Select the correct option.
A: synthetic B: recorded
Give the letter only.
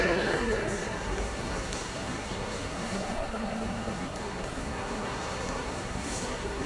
A